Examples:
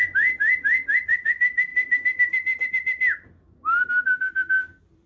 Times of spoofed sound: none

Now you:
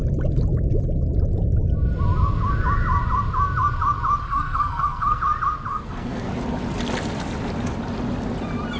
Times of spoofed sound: 4.2-5.2; 5.7-6.3